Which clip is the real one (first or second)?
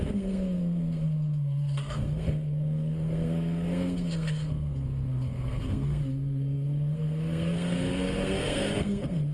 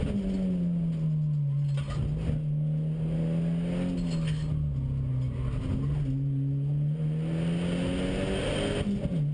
second